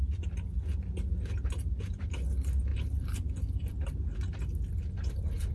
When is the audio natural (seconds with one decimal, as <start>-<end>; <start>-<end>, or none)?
0.0-2.7; 3.8-5.5

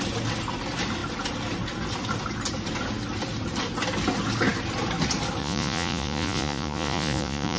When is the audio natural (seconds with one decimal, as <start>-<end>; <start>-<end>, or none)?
0.0-5.4

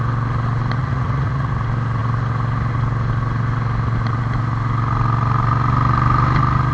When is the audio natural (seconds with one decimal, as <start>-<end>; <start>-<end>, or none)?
0.0-0.8; 1.5-6.7

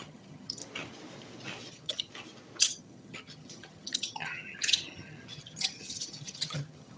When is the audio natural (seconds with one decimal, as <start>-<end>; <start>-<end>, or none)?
0.6-1.7; 2.1-2.6

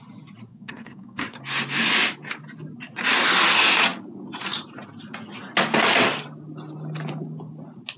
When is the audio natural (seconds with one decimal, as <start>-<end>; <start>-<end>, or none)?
0.0-0.5; 1.4-8.0

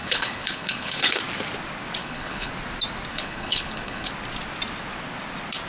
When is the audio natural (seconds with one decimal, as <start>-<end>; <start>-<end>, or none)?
1.2-2.0; 2.5-3.1; 4.1-5.7